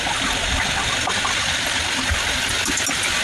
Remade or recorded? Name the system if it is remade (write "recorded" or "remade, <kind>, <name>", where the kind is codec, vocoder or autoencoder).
recorded